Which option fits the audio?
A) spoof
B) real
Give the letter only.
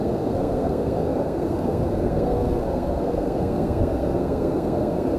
A